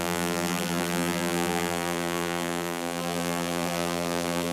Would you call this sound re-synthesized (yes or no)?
yes